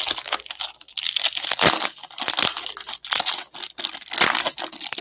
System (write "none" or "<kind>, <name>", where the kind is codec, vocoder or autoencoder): none